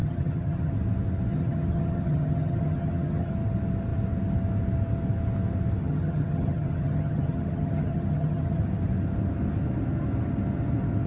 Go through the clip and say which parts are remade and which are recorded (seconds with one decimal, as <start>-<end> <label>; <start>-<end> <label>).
0.0-0.7 remade; 0.7-1.3 recorded; 1.3-3.3 remade; 3.3-5.8 recorded; 5.8-8.6 remade; 8.6-11.1 recorded